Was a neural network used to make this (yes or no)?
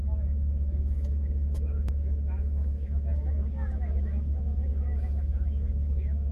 yes